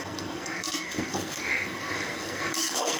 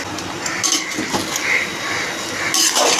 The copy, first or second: first